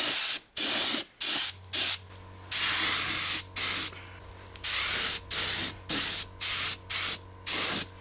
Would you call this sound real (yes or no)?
yes